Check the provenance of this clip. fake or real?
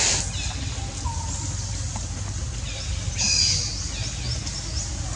real